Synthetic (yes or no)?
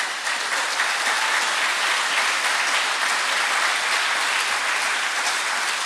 no